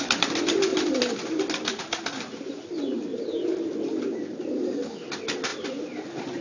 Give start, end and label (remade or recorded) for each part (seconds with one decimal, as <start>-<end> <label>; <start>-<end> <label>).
0.0-6.4 recorded